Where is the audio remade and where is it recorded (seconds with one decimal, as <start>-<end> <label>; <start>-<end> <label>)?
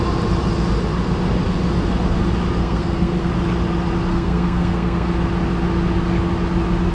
0.0-2.6 recorded; 2.6-3.3 remade; 3.3-4.1 recorded; 4.1-5.1 remade; 5.1-6.9 recorded